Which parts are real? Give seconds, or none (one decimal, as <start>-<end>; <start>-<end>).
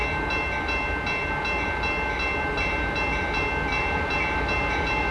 0.0-5.1